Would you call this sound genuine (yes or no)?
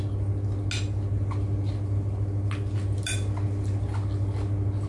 yes